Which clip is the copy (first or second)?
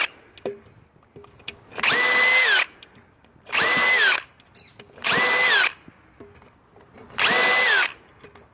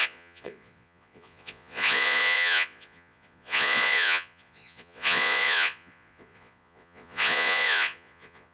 second